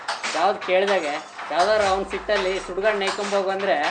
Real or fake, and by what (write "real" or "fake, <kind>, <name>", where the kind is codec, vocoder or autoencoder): real